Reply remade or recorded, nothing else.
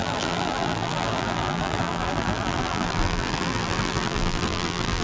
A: remade